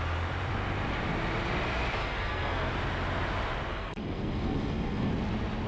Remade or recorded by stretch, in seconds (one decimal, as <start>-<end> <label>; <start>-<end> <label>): 0.0-2.0 recorded; 2.0-2.7 remade; 2.7-3.7 recorded; 3.7-5.1 remade; 5.1-5.7 recorded